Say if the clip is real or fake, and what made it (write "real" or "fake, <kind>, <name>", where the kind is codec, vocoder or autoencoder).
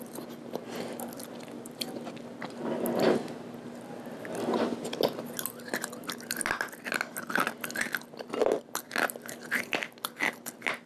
real